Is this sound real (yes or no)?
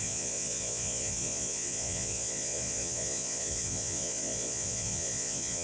no